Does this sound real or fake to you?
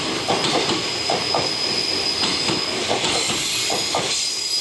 real